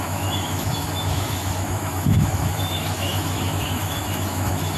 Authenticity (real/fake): fake